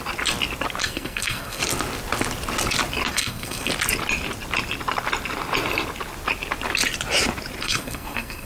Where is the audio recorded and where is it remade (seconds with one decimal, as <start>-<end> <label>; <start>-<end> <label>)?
0.0-0.8 recorded; 0.8-1.6 remade; 1.6-3.1 recorded; 3.1-3.7 remade; 3.7-7.6 recorded; 7.6-8.5 remade